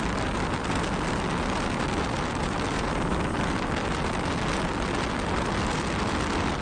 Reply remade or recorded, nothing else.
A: recorded